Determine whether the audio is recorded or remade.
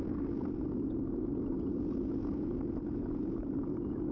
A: recorded